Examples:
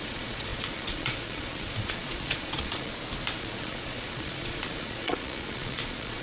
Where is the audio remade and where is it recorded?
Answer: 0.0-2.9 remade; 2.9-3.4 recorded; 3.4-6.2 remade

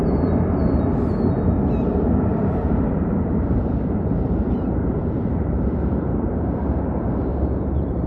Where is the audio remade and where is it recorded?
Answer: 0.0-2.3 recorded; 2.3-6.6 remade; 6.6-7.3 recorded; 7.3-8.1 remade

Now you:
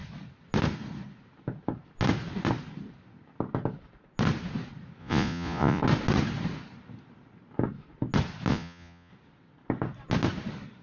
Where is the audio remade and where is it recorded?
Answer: 0.0-5.0 recorded; 5.0-5.8 remade; 5.8-8.5 recorded; 8.5-9.1 remade; 9.1-10.8 recorded

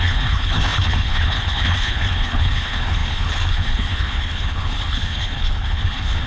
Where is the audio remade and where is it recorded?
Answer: 0.0-6.3 remade